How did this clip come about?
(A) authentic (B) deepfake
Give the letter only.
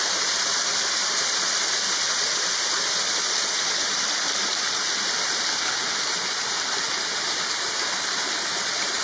A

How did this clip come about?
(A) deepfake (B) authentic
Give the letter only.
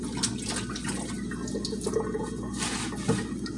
B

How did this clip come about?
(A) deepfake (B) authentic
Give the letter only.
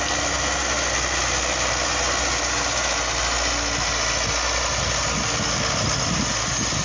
B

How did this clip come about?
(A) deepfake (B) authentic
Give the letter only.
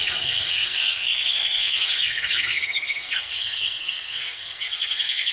A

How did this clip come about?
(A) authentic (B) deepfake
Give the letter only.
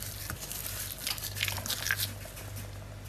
A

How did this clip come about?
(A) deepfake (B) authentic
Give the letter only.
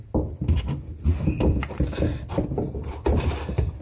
B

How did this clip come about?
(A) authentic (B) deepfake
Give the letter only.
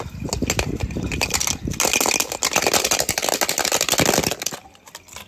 A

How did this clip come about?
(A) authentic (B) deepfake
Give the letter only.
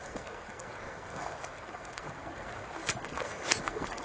B